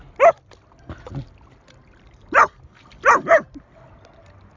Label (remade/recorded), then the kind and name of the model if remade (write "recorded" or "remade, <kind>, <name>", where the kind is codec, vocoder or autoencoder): recorded